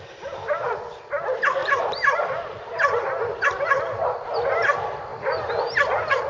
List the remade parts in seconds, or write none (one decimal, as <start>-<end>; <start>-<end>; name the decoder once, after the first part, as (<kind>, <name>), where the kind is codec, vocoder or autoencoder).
1.6-3.6 (vocoder, BigVGAN v2); 5.1-5.6